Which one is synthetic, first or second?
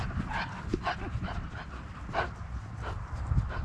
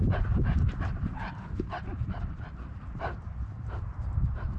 second